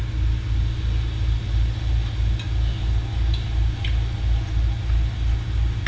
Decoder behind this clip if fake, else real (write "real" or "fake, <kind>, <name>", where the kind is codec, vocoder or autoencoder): real